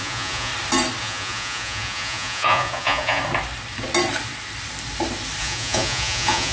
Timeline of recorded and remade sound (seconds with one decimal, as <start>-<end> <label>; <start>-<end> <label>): 0.0-0.5 remade; 0.5-1.0 recorded; 1.0-3.2 remade; 3.2-5.4 recorded; 5.4-6.5 remade